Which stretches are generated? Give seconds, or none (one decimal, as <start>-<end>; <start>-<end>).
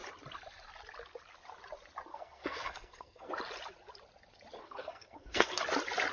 2.1-3.3; 4.6-5.6